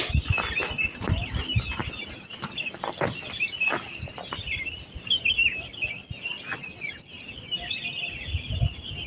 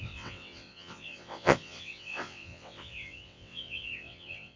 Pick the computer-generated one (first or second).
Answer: second